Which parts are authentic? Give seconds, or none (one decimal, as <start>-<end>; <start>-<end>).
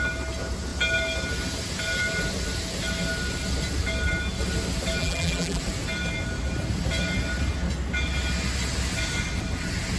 0.0-5.0; 5.6-10.0